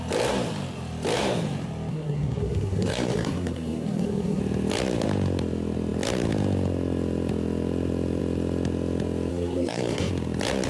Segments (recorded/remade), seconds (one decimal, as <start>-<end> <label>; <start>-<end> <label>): 0.0-1.9 recorded; 1.9-4.4 remade; 4.4-9.3 recorded; 9.3-10.1 remade; 10.1-10.7 recorded